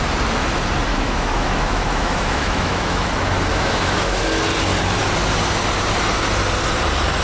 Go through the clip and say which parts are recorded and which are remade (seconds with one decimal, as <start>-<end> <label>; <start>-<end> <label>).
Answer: 0.0-0.9 recorded; 0.9-3.1 remade; 3.1-3.5 recorded; 3.5-4.2 remade; 4.2-7.2 recorded